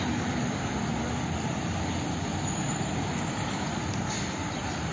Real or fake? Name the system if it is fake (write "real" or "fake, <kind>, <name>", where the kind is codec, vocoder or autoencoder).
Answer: real